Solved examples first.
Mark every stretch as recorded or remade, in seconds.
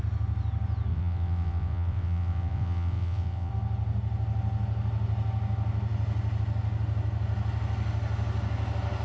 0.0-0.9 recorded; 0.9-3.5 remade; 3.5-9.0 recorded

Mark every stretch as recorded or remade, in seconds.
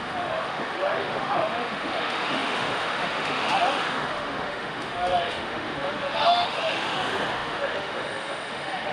0.0-8.9 remade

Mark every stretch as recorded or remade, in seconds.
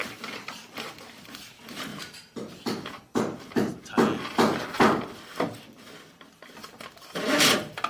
0.0-0.5 remade; 0.5-1.9 recorded; 1.9-3.7 remade; 3.7-7.9 recorded